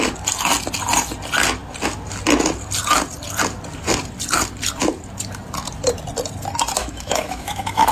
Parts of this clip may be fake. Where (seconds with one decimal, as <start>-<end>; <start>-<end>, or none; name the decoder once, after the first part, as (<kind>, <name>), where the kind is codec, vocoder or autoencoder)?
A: 6.8-7.9 (autoencoder, DAC-VAE)